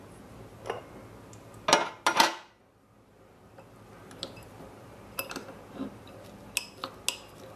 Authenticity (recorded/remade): recorded